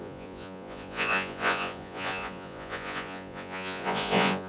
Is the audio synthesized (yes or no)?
yes